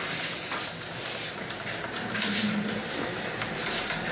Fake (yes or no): no